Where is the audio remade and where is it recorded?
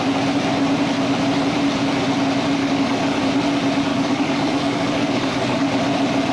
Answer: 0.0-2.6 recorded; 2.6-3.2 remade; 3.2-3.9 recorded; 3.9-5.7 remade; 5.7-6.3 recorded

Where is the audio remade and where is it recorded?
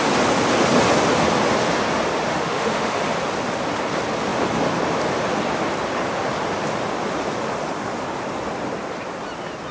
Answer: 0.0-2.3 recorded; 2.3-3.0 remade; 3.0-9.7 recorded